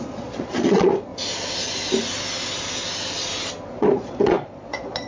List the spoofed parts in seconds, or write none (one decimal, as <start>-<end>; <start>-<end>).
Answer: 0.0-1.1; 3.7-5.1